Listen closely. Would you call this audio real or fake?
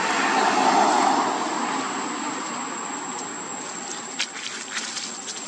real